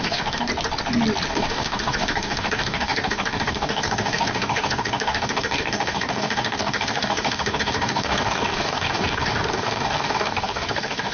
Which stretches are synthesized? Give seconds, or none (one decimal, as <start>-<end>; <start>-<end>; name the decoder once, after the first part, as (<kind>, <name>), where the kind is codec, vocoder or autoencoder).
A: 0.0-0.5 (codec, DAC); 1.3-11.1